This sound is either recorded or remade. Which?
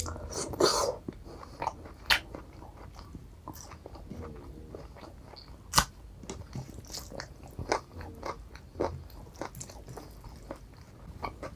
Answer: recorded